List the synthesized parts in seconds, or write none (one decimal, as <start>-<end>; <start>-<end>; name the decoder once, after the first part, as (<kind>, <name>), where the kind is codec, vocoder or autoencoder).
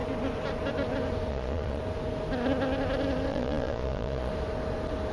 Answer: 1.3-1.8 (vocoder, Vocos); 3.3-4.3